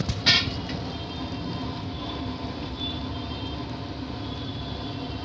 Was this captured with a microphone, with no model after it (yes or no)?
yes